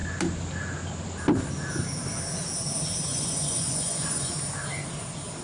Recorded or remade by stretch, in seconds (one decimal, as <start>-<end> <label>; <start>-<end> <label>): 0.0-3.1 recorded; 3.1-4.4 remade; 4.4-5.4 recorded